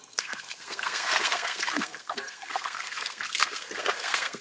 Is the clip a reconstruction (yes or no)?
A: yes